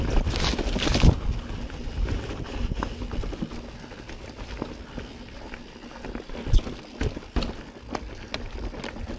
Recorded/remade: recorded